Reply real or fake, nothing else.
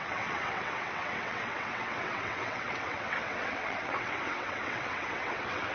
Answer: fake